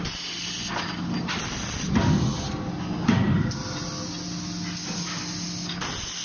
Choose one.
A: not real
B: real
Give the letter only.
B